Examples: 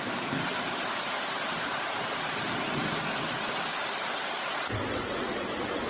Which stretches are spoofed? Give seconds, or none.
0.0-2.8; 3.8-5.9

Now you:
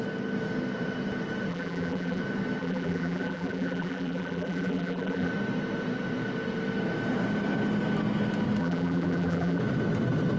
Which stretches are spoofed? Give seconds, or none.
1.5-2.2; 2.6-5.3; 8.6-9.6

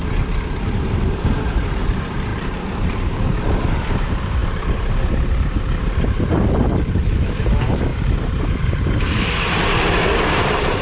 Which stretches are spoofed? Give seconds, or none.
1.0-10.8

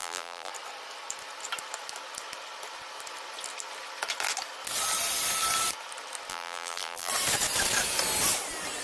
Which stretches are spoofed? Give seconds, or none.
0.0-0.5; 6.3-7.1